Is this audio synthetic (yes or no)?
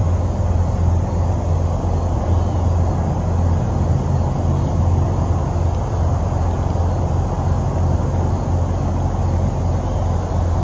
no